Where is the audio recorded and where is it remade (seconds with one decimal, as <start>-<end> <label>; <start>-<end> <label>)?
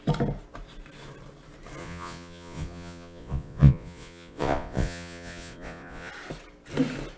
0.0-1.8 recorded; 1.8-6.1 remade; 6.1-7.2 recorded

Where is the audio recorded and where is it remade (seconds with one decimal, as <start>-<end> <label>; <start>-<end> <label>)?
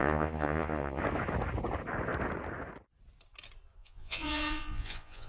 0.0-1.0 remade; 1.0-3.8 recorded; 3.8-5.3 remade